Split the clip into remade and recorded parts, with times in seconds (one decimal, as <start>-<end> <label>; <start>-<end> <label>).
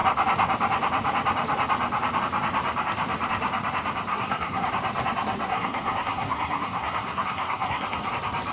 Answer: 0.0-4.1 recorded; 4.1-4.7 remade; 4.7-5.5 recorded; 5.5-8.1 remade; 8.1-8.5 recorded